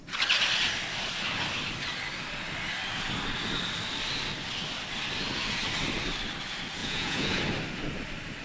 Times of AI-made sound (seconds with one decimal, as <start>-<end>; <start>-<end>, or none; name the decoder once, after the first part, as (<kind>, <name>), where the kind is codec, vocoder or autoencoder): 6.8-7.4 (vocoder, Vocos)